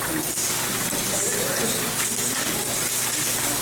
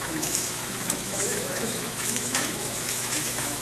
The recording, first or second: first